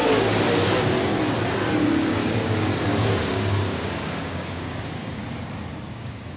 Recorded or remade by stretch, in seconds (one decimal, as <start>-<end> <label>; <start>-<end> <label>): 0.0-1.8 recorded; 1.8-2.7 remade; 2.7-3.2 recorded; 3.2-5.2 remade; 5.2-5.9 recorded; 5.9-6.4 remade